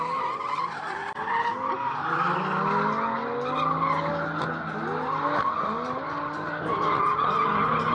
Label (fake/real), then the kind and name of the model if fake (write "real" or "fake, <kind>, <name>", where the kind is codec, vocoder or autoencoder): real